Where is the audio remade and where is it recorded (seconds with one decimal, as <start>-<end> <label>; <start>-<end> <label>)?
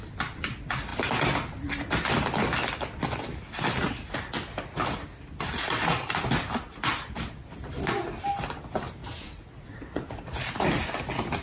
0.0-9.0 recorded; 9.0-10.7 remade; 10.7-11.4 recorded